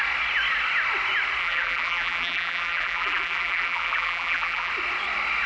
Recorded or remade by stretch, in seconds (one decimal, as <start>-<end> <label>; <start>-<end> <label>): 0.0-1.4 recorded; 1.4-4.7 remade; 4.7-5.5 recorded